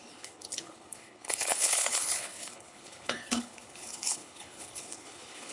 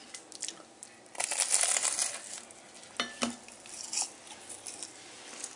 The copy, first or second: first